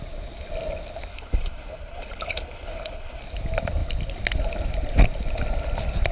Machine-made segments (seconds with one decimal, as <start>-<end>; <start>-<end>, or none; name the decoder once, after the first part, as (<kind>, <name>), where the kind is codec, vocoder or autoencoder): 1.1-3.2 (codec, HILCodec)